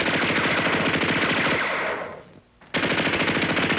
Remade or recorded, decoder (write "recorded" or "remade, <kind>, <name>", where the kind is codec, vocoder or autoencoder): recorded